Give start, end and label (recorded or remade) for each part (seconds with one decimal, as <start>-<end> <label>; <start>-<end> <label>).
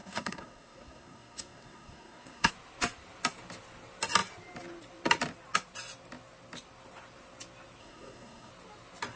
0.0-2.5 remade; 2.5-7.8 recorded; 7.8-8.5 remade; 8.5-9.2 recorded